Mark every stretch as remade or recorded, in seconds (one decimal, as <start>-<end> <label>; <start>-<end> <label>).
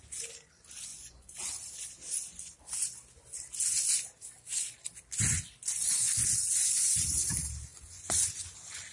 0.0-0.9 recorded; 0.9-1.7 remade; 1.7-7.7 recorded; 7.7-8.4 remade; 8.4-8.9 recorded